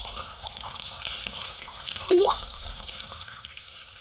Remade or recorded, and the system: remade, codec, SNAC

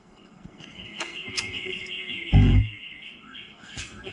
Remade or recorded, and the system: remade, codec, SNAC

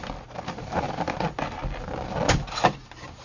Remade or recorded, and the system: recorded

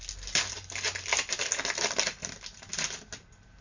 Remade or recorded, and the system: recorded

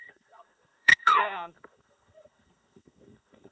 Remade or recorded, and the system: remade, codec, SNAC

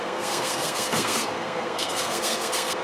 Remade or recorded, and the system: remade, codec, SNAC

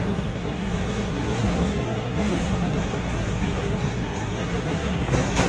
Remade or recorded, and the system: remade, codec, SNAC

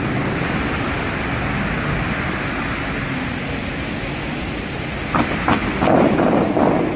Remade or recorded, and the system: recorded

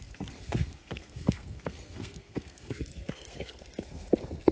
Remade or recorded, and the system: remade, codec, SNAC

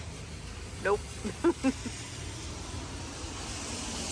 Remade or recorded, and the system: recorded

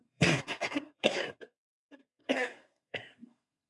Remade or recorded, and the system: remade, codec, SNAC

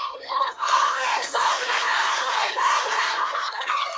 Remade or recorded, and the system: remade, codec, SNAC